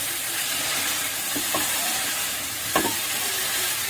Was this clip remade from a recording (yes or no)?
yes